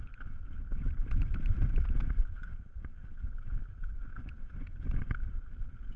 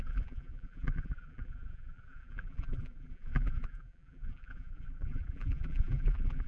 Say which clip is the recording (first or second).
first